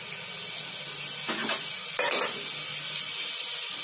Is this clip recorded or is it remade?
recorded